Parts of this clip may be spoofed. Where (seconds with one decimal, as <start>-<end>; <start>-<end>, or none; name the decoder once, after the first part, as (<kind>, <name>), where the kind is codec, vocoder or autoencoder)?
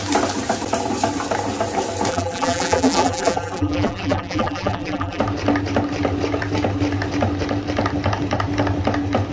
2.1-5.2 (vocoder, BigVGAN v2)